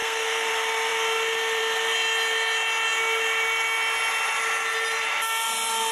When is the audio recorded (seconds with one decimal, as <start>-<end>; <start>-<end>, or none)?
0.5-5.9